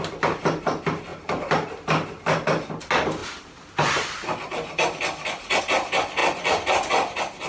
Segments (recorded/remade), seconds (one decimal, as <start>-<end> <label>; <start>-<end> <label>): 0.0-7.5 recorded